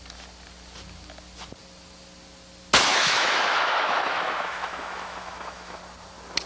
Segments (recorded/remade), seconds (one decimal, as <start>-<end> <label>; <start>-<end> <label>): 0.0-2.9 recorded; 2.9-5.8 remade; 5.8-6.5 recorded